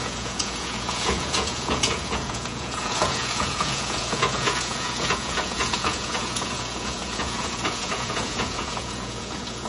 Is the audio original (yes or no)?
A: no